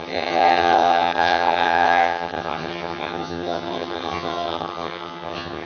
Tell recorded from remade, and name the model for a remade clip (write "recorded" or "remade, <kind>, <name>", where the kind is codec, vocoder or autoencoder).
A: remade, vocoder, HiFi-GAN